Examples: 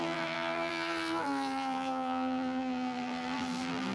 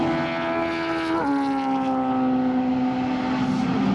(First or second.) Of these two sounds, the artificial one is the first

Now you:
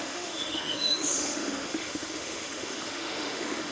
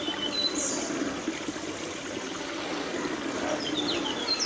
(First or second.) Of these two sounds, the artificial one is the first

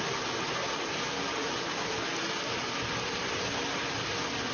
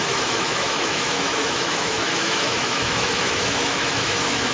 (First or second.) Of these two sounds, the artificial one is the second